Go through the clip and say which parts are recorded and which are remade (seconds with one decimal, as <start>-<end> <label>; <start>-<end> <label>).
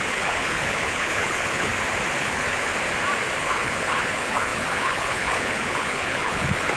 0.0-1.7 remade; 1.7-2.2 recorded; 2.2-2.7 remade; 2.7-3.4 recorded; 3.4-6.8 remade